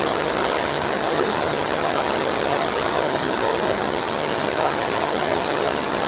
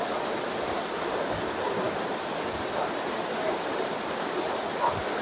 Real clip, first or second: second